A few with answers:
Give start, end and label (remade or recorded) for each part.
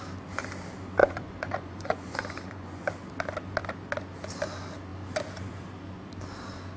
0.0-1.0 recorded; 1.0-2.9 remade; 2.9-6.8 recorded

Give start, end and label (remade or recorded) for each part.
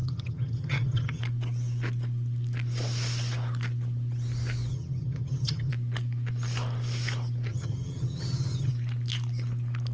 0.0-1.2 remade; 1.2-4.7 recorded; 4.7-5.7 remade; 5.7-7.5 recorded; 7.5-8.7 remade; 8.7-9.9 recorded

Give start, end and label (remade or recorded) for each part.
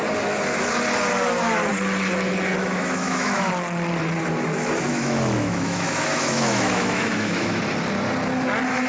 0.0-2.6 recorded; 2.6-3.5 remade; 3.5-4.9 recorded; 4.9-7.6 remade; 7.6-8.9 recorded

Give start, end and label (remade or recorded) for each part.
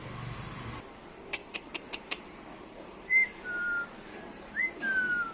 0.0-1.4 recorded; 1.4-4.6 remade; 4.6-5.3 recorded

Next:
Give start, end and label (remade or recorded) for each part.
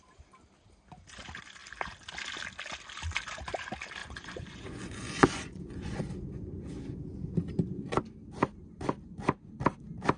0.0-4.0 recorded; 4.0-6.0 remade; 6.0-10.2 recorded